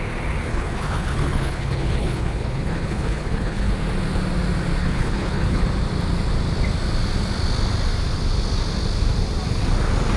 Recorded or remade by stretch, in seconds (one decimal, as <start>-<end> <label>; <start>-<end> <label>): 0.0-0.5 recorded; 0.5-3.7 remade; 3.7-4.8 recorded; 4.8-5.6 remade; 5.6-10.2 recorded